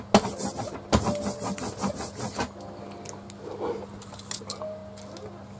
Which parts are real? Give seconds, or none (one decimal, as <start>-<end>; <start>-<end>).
0.0-5.6